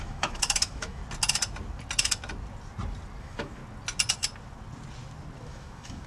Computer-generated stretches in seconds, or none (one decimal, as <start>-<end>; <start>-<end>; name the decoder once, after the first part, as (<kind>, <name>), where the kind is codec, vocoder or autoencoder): 0.0-1.0 (autoencoder, DAC-VAE); 3.2-3.6; 5.5-6.1

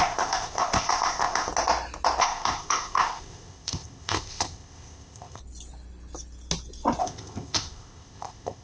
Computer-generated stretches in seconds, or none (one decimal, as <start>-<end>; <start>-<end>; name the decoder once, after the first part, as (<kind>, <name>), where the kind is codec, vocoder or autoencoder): 0.0-1.5 (codec, ZipCodec); 2.2-5.4; 7.0-8.6